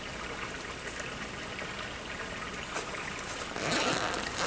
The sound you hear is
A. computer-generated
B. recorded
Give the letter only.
B